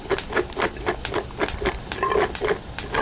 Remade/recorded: recorded